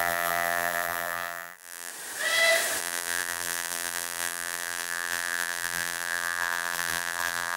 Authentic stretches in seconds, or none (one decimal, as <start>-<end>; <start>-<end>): 1.9-2.8